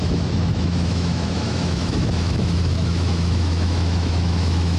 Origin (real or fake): fake